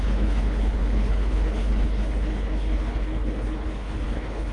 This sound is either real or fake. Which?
fake